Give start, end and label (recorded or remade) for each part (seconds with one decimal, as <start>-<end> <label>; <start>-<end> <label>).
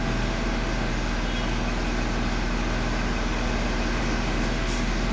0.0-0.9 remade; 0.9-4.0 recorded; 4.0-5.1 remade